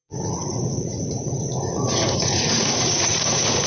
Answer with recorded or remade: remade